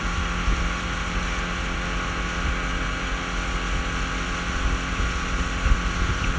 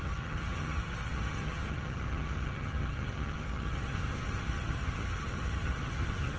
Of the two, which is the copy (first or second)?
second